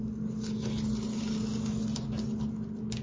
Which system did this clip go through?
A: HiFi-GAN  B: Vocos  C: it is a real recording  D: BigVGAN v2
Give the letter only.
C